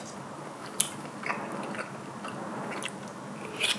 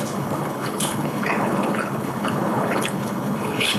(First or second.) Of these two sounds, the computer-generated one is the second